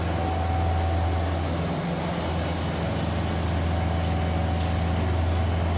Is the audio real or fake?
real